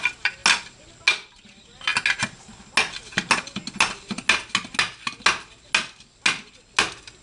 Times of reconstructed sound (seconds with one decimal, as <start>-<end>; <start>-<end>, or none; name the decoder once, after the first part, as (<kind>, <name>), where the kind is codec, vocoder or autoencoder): none